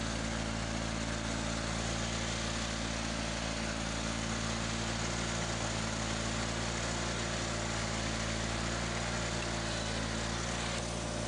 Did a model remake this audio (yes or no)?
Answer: no